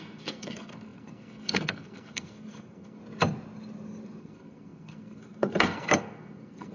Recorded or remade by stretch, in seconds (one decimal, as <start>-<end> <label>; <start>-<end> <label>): 0.0-3.0 remade; 3.0-4.2 recorded; 4.2-6.7 remade